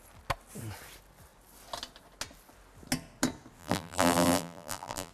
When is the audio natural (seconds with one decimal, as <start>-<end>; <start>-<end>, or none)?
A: 0.0-3.6